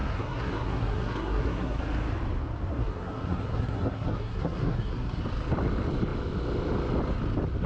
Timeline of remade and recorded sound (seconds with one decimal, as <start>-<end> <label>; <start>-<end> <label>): 0.0-1.8 remade; 1.8-2.7 recorded; 2.7-5.2 remade; 5.2-7.7 recorded